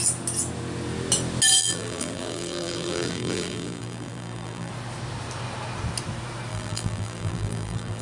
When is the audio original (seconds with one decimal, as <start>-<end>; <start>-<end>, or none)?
0.0-1.6; 4.7-6.5